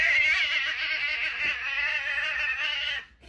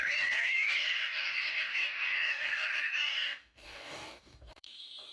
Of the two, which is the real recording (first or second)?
first